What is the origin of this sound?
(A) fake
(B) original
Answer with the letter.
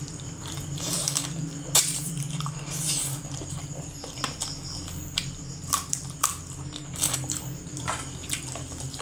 A